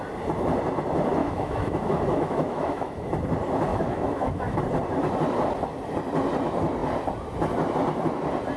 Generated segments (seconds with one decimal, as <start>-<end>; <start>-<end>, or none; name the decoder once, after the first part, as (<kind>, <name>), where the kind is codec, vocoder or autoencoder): 1.2-3.1 (autoencoder, DAC-VAE); 3.7-4.6